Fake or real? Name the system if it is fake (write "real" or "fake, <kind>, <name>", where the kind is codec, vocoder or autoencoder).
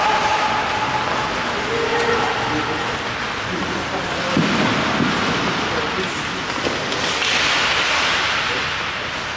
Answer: real